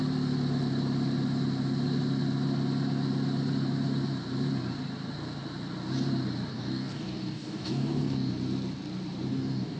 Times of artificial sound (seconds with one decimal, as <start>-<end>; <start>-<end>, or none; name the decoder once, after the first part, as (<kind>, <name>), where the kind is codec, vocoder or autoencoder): 6.5-8.3 (codec, DAC); 9.3-9.8